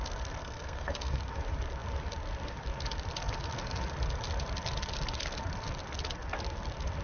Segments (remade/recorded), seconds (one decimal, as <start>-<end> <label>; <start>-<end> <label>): 0.0-0.4 recorded; 0.4-1.2 remade; 1.2-7.0 recorded